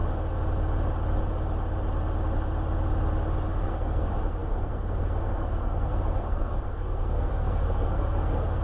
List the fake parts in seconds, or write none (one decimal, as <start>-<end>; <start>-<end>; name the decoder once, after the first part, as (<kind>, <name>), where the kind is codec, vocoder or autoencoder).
3.6-8.6 (codec, SNAC)